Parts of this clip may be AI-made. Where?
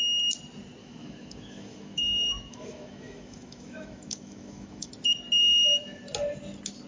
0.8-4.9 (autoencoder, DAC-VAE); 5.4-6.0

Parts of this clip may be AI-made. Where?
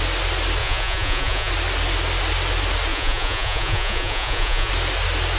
0.6-1.5 (vocoder, Vocos); 2.9-4.7